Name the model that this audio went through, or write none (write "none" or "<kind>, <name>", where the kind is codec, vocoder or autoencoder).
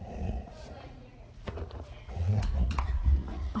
vocoder, Vocos